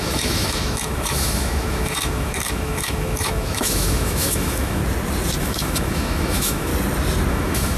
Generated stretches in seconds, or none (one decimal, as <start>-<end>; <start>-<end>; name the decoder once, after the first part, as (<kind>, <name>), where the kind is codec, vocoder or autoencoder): 0.0-4.8 (autoencoder, DAC-VAE); 5.4-6.7; 7.3-7.8